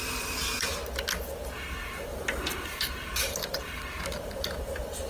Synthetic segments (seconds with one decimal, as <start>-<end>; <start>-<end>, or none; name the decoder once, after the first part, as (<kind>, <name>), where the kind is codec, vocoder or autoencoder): 0.0-0.8 (vocoder, BigVGAN v2); 1.8-5.1